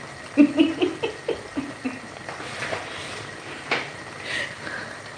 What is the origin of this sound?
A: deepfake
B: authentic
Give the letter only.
B